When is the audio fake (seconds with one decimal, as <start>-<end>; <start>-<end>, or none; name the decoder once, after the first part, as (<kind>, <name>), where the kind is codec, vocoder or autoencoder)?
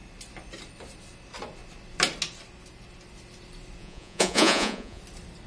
3.8-5.0 (vocoder, Vocos)